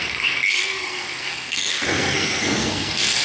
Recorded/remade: remade